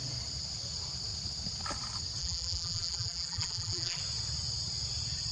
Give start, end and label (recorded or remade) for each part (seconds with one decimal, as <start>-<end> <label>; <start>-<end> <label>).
0.0-2.2 recorded; 2.2-4.0 remade; 4.0-5.3 recorded